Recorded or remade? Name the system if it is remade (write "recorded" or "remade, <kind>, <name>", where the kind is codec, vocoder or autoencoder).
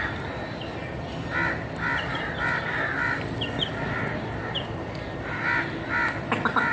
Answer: recorded